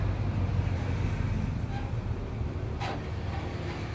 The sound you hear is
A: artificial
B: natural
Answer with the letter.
B